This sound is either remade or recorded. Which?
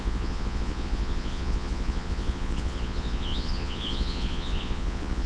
remade